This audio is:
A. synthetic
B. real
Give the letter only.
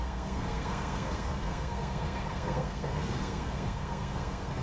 A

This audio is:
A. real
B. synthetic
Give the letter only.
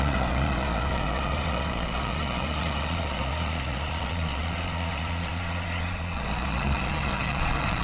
B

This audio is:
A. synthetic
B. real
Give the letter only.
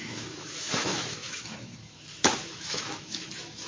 A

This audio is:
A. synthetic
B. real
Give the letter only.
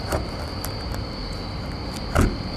B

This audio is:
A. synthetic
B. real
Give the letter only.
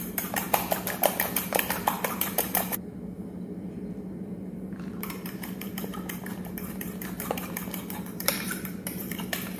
A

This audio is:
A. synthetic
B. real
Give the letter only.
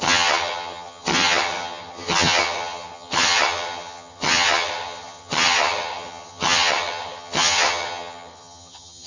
A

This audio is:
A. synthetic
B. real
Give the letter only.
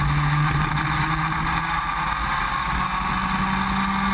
B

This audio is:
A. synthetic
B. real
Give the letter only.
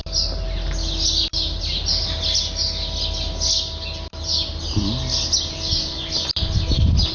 B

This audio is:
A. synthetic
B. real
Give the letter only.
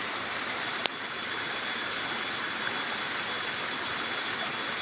B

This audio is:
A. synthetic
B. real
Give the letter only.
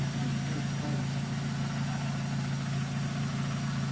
B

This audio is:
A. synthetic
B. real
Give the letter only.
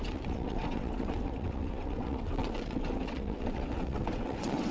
A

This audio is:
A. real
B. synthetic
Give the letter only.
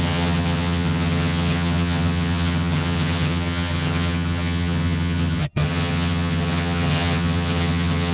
B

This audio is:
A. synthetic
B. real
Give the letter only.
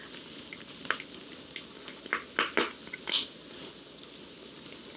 B